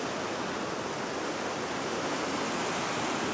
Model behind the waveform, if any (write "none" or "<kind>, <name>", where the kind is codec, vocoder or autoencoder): none